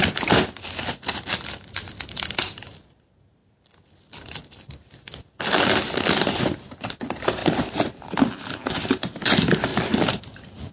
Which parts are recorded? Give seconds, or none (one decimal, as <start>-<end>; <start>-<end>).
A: 0.0-10.7